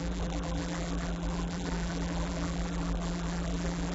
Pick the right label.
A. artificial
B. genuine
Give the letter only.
A